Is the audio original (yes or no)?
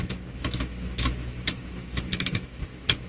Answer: no